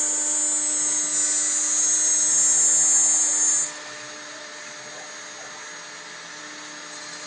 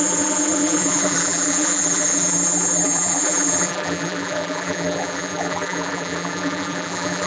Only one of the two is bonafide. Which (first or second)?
first